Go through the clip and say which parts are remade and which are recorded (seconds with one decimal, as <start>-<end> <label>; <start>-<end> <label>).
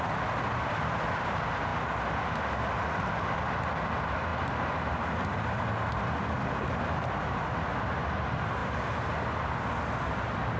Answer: 0.0-10.6 recorded